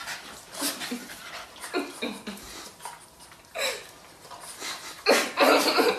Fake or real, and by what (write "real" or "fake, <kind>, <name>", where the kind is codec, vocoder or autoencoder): real